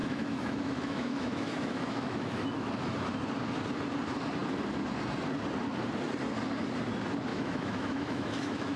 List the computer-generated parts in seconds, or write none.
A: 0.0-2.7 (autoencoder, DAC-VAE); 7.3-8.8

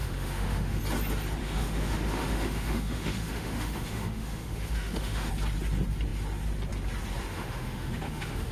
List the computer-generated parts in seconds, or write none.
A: 0.0-0.8 (autoencoder, DAC-VAE); 1.4-5.3; 7.3-8.5

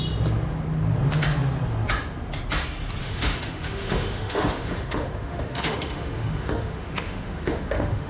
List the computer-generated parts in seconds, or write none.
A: 3.0-8.1 (autoencoder, DAC-VAE)